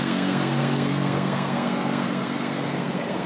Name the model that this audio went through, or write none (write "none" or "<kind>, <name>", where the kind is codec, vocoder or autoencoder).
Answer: codec, SNAC